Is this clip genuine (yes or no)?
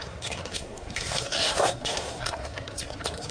no